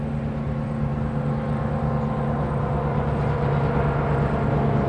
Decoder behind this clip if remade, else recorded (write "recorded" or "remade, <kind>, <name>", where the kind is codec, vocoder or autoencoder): recorded